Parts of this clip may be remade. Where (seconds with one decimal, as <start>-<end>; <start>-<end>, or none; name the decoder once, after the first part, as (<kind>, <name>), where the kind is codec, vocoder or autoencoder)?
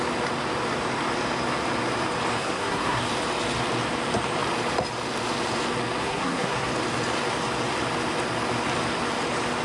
2.4-3.0 (codec, SNAC); 6.0-6.7